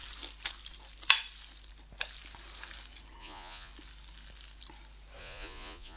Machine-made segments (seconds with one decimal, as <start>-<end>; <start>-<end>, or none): 3.2-3.7; 5.2-6.0